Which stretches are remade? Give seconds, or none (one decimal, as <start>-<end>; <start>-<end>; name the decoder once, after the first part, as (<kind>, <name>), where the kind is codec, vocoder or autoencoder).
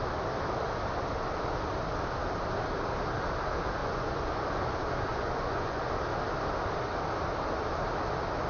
3.8-4.4 (vocoder, Vocos); 5.1-5.8